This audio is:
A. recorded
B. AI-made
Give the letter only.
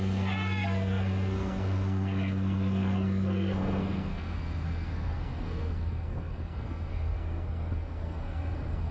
B